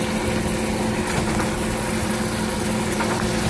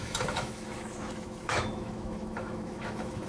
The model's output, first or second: second